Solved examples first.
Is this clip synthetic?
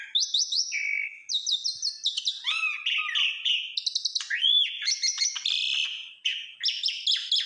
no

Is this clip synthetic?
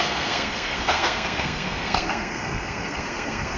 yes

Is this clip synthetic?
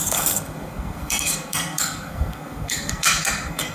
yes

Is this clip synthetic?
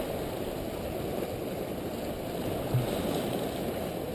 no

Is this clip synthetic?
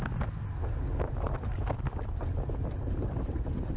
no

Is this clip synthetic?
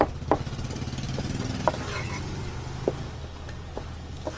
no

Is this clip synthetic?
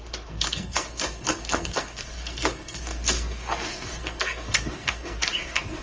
yes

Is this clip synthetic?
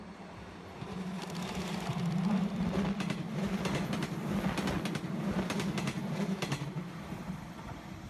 no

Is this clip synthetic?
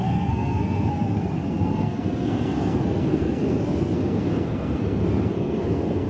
yes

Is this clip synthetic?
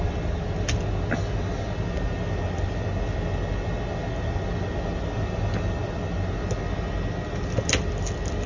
no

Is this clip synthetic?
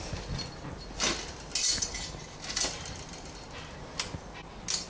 no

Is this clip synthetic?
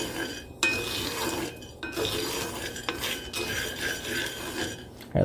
no